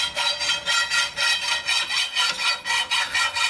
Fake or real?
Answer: real